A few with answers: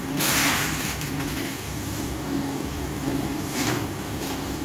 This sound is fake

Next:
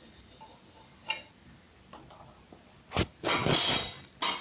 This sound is real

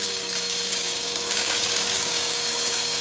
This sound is fake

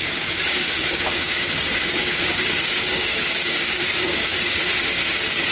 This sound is fake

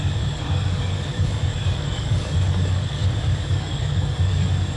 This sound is fake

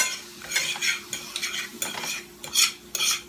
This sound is real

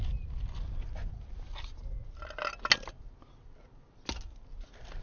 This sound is real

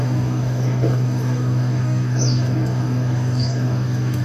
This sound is fake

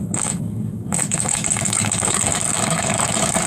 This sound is fake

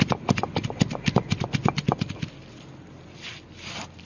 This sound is real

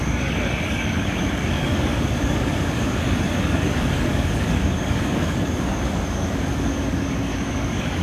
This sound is fake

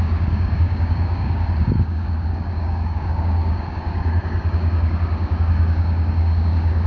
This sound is fake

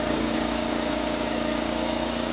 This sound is fake